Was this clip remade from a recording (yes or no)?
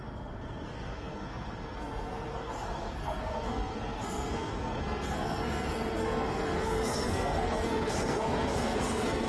yes